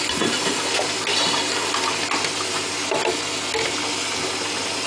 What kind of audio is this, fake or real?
real